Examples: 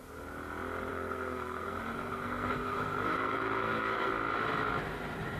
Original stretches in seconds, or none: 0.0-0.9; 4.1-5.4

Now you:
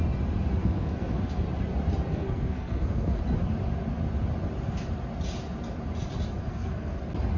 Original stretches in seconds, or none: 0.0-0.6; 1.2-2.1; 3.2-6.5; 7.0-7.4

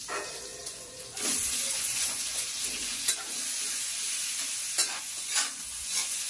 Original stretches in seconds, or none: 0.0-0.5; 4.3-4.8

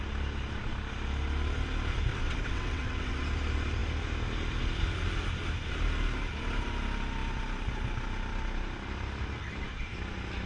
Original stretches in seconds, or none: 0.0-2.1; 3.2-10.5

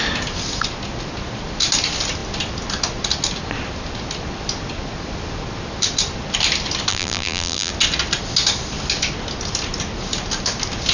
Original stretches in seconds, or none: 0.0-6.9; 7.7-10.9

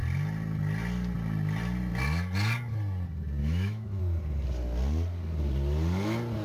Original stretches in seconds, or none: 0.0-3.4; 4.0-6.4